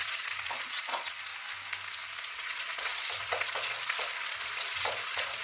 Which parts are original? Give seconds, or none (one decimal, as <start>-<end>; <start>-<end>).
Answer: 1.3-2.3